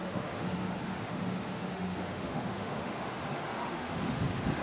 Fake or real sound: fake